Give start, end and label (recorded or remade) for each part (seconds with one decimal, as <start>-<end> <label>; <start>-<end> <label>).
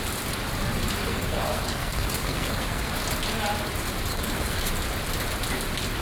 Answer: 0.0-1.0 recorded; 1.0-2.9 remade; 2.9-4.1 recorded; 4.1-4.7 remade; 4.7-6.0 recorded